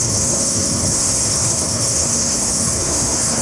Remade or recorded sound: remade